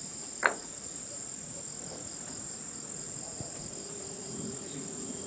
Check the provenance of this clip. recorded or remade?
remade